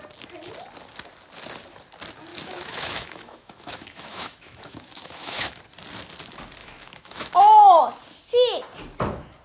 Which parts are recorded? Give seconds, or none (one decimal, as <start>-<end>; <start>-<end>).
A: 0.0-2.3; 5.6-6.6; 7.8-9.4